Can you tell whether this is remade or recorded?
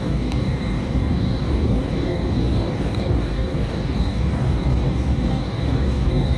remade